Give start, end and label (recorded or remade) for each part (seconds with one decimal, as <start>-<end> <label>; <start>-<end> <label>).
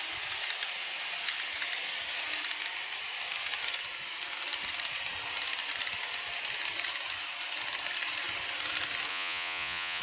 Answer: 0.0-9.1 recorded; 9.1-10.0 remade